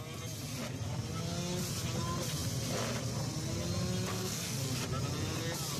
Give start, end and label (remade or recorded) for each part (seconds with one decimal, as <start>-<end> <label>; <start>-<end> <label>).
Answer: 0.0-4.1 recorded; 4.1-4.7 remade; 4.7-5.8 recorded